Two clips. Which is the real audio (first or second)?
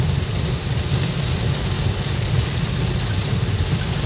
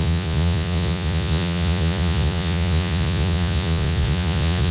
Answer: first